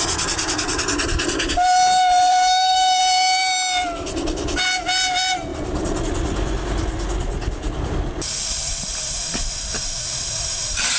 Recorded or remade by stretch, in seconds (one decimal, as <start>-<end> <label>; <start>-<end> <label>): 0.0-2.3 recorded; 2.3-3.0 remade; 3.0-11.0 recorded